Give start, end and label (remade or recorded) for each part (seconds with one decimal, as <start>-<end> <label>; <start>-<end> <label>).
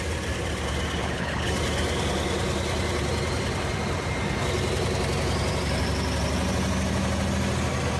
0.0-1.0 recorded; 1.0-1.5 remade; 1.5-8.0 recorded